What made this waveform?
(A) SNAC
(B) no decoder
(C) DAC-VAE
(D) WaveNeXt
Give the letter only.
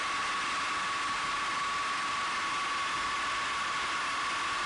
B